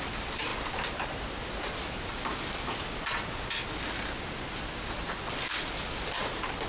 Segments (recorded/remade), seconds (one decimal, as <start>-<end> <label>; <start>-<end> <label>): 0.0-6.7 recorded